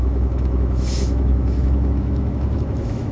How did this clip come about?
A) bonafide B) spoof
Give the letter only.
B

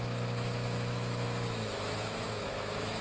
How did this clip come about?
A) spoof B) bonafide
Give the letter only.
A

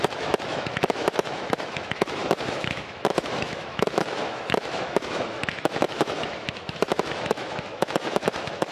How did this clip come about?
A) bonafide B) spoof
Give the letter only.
B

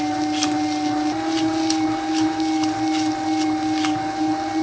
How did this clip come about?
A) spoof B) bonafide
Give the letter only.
B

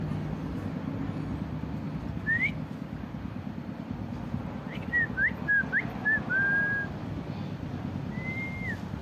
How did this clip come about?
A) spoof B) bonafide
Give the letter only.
B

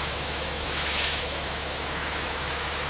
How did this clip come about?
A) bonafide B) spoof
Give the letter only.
B